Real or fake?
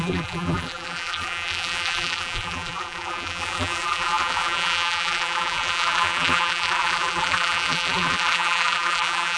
fake